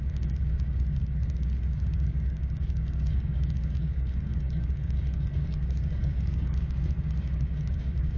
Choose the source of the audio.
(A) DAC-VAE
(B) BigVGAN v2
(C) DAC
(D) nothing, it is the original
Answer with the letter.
C